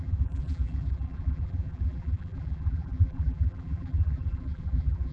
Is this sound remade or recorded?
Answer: remade